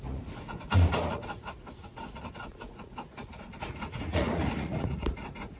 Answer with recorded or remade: remade